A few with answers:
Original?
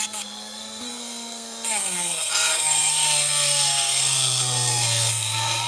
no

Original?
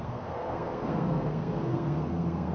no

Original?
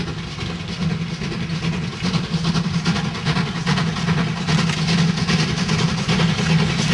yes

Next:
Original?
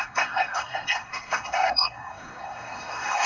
no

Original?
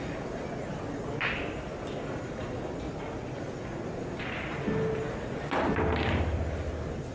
yes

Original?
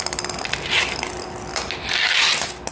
yes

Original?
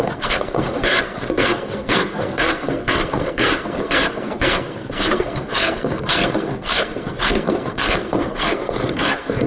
no